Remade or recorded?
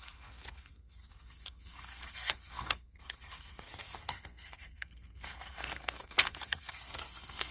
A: remade